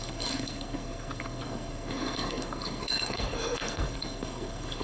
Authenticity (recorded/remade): remade